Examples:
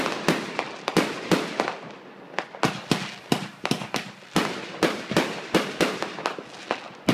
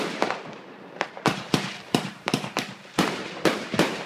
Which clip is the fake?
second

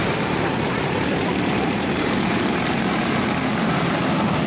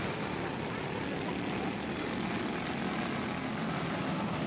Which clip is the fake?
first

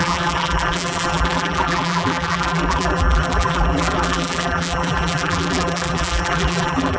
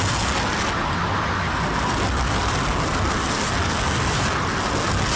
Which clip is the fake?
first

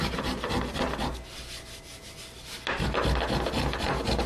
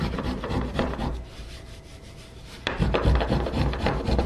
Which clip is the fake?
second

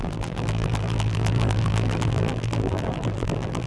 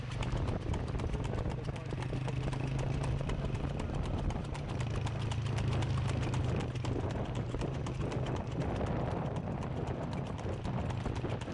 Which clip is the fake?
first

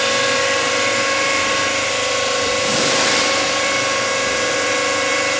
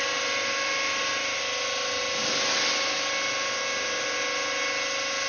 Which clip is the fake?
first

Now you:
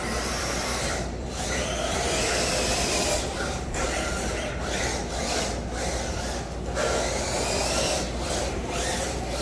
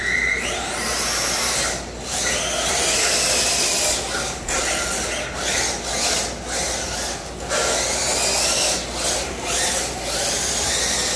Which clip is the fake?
first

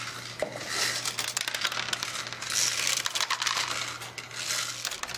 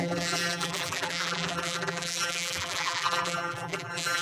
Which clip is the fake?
second